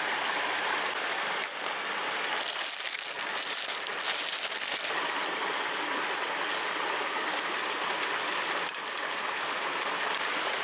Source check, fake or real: real